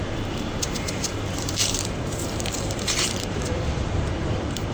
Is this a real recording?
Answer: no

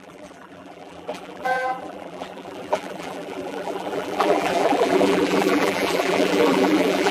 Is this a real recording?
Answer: no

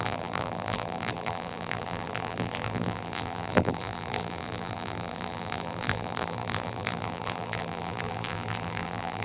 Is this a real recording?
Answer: no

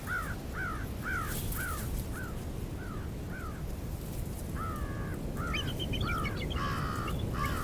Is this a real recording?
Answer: yes